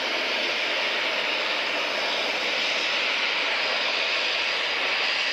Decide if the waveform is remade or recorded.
recorded